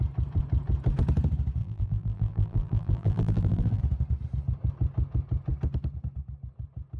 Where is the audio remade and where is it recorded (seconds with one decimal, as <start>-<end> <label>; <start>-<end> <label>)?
0.0-1.6 recorded; 1.6-3.8 remade; 3.8-7.0 recorded